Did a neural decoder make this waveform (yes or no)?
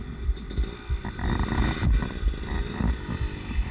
no